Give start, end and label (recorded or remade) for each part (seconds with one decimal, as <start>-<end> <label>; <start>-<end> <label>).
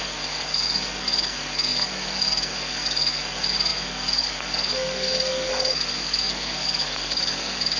0.0-7.8 remade